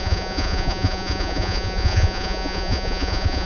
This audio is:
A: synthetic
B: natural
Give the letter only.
A